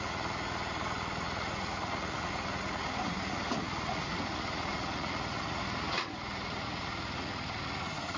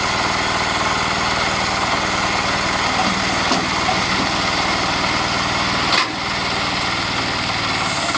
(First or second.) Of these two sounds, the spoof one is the first